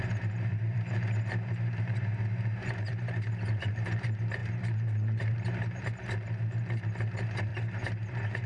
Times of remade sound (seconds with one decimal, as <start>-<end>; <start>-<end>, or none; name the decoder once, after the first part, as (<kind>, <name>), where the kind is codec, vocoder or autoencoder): 0.0-7.5 (vocoder, BigVGAN v2)